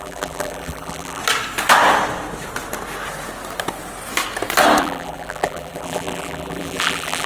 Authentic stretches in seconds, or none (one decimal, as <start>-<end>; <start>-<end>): 1.2-4.8